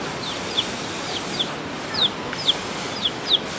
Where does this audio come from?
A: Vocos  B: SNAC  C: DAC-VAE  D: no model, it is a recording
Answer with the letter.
D